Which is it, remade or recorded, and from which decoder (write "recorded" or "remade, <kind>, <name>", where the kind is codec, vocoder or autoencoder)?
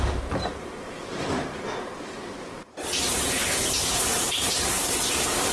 remade, vocoder, BigVGAN v2